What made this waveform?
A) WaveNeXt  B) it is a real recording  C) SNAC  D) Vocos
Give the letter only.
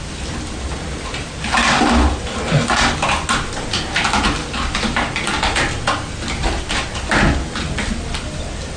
B